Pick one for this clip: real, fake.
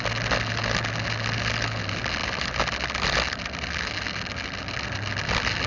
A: real